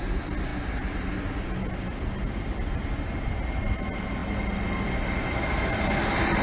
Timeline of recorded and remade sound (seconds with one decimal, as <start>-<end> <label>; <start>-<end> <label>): 0.0-6.4 recorded